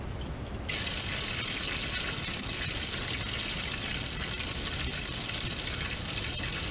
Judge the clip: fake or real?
real